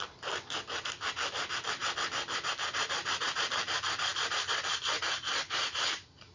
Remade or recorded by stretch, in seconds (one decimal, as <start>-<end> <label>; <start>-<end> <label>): 0.0-6.3 recorded